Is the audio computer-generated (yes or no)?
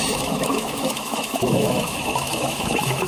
yes